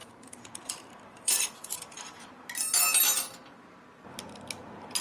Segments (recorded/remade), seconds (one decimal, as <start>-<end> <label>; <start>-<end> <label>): 0.0-2.5 remade; 2.5-5.0 recorded